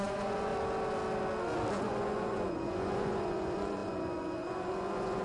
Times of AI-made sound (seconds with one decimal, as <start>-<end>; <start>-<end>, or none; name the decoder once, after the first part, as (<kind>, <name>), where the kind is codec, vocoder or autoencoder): 0.0-0.5 (vocoder, Vocos); 1.7-5.2